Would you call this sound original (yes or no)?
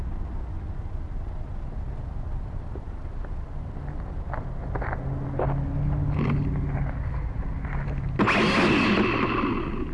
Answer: yes